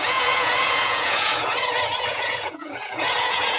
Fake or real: fake